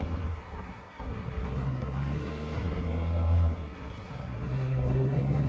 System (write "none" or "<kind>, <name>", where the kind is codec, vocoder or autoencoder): codec, SNAC